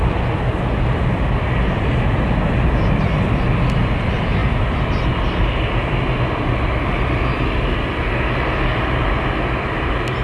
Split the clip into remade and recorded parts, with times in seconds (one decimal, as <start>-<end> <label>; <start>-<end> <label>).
0.0-10.2 recorded